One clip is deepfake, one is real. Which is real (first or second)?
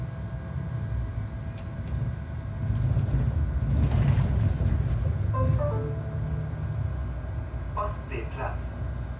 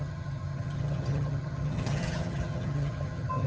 first